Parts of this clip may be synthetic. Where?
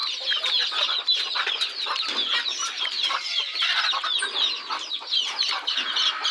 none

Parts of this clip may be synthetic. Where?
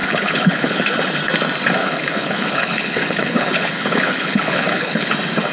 0.0-0.8 (codec, HILCodec); 1.8-5.1